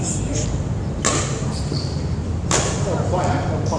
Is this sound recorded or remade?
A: recorded